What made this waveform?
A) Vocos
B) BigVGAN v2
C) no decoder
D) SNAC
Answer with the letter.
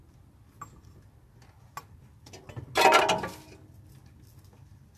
C